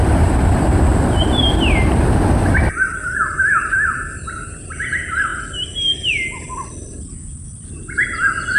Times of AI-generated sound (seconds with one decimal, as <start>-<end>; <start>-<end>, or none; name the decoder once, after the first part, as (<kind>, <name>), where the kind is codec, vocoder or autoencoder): none